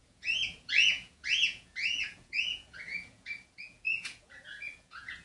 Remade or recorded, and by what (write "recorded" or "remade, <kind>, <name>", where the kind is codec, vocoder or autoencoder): remade, vocoder, Vocos